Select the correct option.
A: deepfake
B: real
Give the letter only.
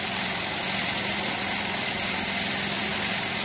B